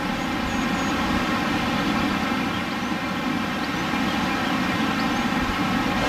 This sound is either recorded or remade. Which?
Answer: recorded